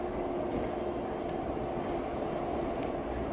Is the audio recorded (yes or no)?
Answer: yes